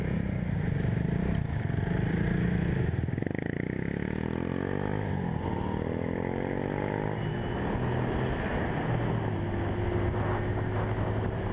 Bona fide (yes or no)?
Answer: yes